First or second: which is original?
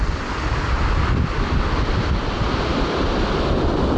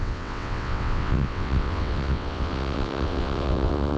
first